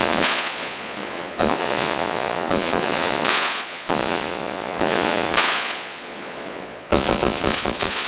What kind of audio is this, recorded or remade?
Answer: remade